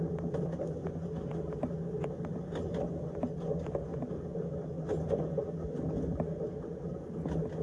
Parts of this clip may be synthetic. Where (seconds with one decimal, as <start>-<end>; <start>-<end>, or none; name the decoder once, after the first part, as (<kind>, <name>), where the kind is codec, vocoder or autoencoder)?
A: none